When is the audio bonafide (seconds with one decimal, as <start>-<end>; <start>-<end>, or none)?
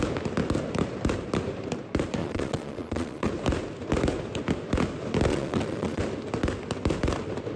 0.0-2.2; 3.3-5.3; 6.0-7.6